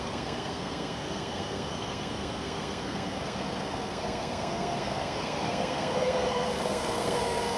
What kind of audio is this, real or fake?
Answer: fake